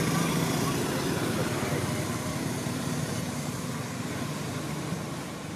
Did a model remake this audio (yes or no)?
no